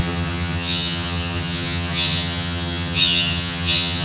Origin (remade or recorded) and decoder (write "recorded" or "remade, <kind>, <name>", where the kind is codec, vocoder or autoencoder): remade, vocoder, HiFi-GAN